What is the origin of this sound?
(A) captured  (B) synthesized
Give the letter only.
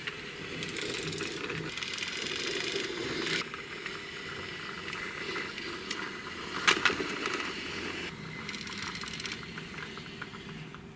A